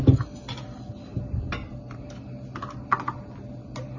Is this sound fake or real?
real